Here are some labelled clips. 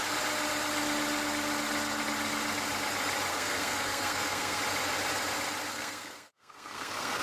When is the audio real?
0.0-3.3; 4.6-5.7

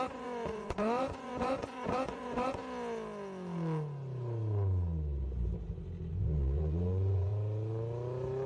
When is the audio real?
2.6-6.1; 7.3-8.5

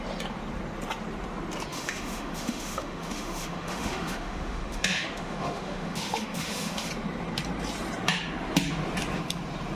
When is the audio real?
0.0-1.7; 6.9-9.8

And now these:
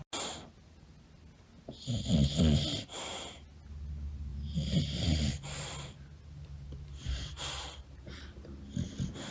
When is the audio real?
0.0-4.3; 8.6-9.3

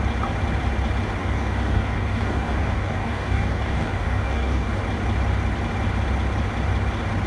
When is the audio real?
0.0-1.2; 4.8-7.3

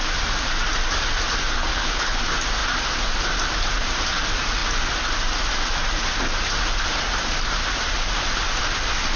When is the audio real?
0.0-1.7; 2.2-9.2

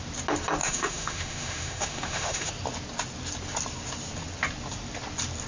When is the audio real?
0.0-0.6; 2.5-5.5